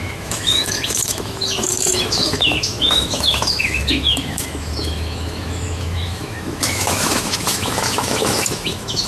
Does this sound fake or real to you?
fake